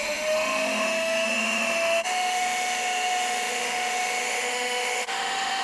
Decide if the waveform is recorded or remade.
remade